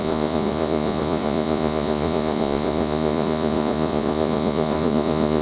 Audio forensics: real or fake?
fake